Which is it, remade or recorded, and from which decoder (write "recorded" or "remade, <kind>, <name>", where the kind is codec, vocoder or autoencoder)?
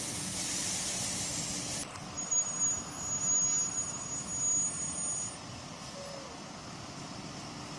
recorded